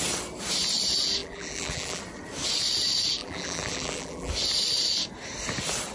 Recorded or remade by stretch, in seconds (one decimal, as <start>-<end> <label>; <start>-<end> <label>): 0.0-1.2 recorded; 1.2-2.0 remade; 2.0-3.2 recorded; 3.2-4.3 remade; 4.3-5.9 recorded